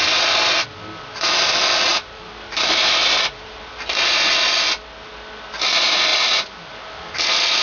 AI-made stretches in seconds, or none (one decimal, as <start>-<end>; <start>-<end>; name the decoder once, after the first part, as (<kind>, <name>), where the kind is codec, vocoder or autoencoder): 1.9-3.6 (vocoder, BigVGAN v2)